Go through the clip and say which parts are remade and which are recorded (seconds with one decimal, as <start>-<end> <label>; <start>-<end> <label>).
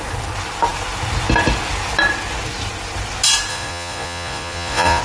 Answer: 0.0-3.5 recorded; 3.5-5.0 remade